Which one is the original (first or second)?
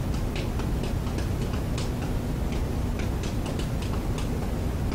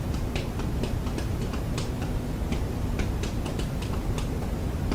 first